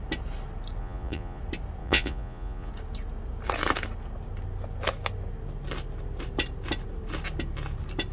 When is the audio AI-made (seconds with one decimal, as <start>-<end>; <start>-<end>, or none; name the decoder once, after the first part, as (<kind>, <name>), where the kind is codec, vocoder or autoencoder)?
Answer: 0.8-1.4 (vocoder, Vocos); 1.8-2.7